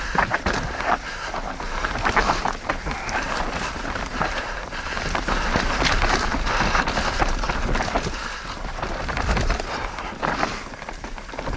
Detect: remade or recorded remade